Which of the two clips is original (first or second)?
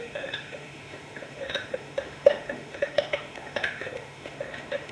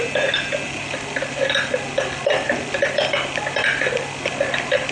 second